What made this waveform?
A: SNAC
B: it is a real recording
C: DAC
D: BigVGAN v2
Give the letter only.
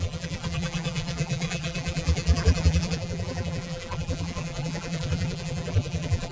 D